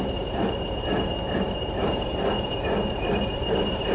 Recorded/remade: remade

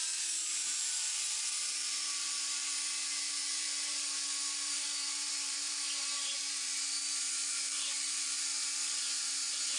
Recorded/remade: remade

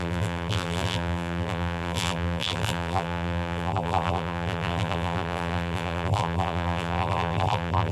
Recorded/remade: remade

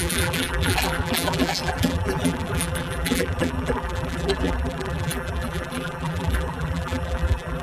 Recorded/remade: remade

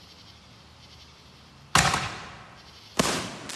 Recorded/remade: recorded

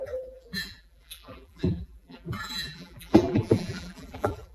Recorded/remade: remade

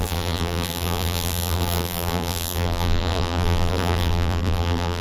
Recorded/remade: remade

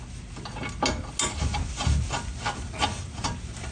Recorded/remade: recorded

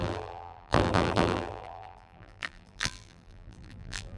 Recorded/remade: remade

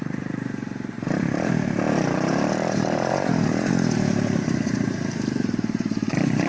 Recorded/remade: remade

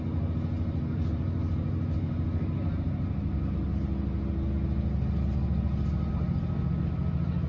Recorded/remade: recorded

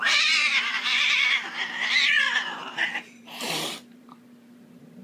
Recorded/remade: remade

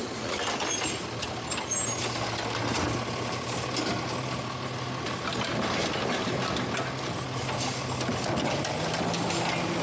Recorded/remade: recorded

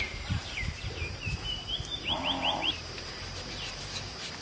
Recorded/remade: remade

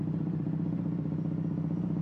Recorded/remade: remade